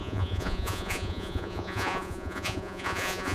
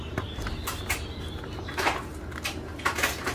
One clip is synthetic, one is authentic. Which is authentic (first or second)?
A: second